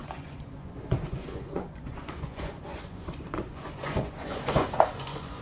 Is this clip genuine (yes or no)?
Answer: no